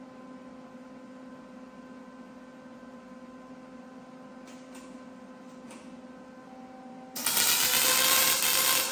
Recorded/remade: recorded